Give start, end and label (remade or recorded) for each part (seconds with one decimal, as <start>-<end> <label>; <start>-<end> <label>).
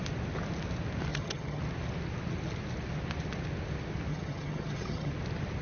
0.0-1.1 recorded; 1.1-1.6 remade; 1.6-4.1 recorded; 4.1-5.1 remade; 5.1-5.6 recorded